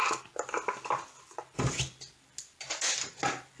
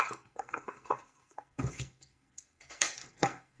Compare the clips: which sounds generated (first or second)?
second